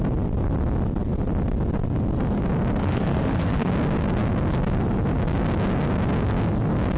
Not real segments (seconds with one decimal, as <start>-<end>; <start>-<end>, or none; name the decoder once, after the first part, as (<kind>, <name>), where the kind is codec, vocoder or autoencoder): 2.8-3.7 (autoencoder, DAC-VAE)